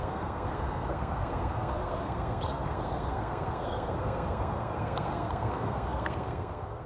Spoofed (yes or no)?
yes